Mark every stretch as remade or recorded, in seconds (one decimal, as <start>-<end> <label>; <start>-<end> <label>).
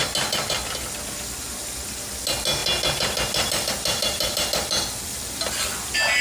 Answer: 0.0-6.2 recorded